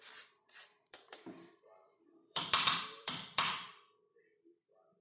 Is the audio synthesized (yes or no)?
yes